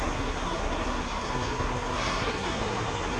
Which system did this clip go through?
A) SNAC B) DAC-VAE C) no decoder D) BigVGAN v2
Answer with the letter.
A